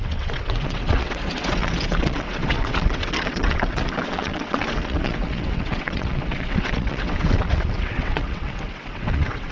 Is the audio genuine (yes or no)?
no